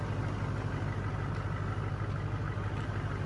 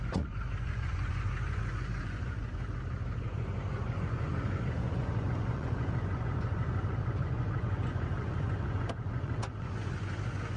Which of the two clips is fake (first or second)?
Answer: second